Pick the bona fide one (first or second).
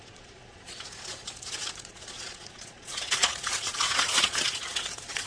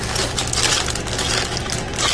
second